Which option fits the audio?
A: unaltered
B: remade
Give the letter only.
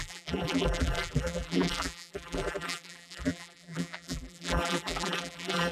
B